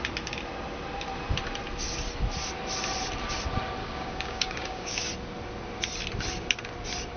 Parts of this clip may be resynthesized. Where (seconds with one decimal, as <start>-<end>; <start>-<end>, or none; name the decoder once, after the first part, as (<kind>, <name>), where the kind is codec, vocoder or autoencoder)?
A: 3.8-5.1 (codec, DAC)